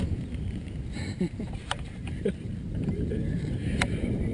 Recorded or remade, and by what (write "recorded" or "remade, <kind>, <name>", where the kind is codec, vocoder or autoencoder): remade, vocoder, BigVGAN v2